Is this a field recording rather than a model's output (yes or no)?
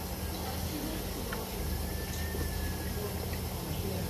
yes